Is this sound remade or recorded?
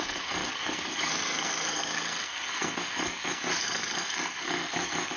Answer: remade